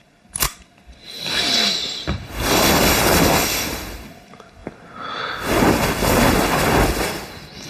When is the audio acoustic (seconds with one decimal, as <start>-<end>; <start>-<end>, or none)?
0.0-4.6; 5.2-7.7